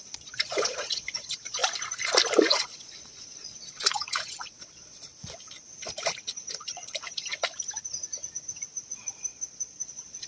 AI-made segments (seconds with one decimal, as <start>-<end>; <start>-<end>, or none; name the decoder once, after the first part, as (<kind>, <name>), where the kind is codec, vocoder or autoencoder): 0.0-1.6 (vocoder, Vocos); 2.5-5.1; 6.5-7.0; 8.8-10.3